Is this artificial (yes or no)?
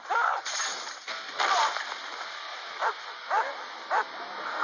no